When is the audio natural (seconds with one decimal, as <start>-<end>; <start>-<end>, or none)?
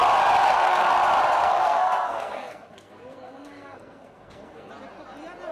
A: 0.0-0.4; 0.9-1.4; 4.7-5.5